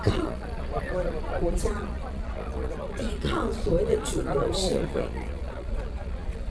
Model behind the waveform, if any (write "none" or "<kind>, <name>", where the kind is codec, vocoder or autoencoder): vocoder, Vocos